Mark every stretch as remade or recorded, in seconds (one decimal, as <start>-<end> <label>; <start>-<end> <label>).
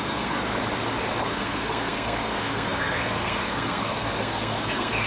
0.0-0.5 remade; 0.5-1.2 recorded; 1.2-5.1 remade